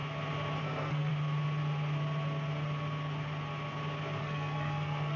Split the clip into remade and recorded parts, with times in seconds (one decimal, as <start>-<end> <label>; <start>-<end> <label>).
0.0-0.6 recorded; 0.6-1.1 remade; 1.1-4.2 recorded; 4.2-5.2 remade